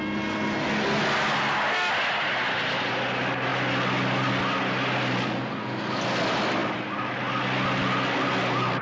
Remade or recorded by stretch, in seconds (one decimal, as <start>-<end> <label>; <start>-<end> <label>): 0.0-8.8 recorded